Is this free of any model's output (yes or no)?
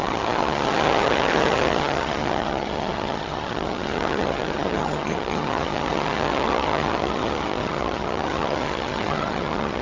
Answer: no